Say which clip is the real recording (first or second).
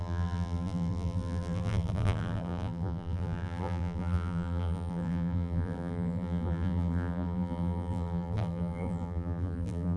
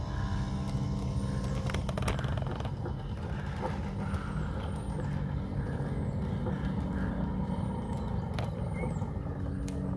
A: second